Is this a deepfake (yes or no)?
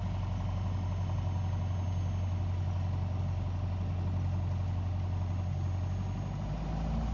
no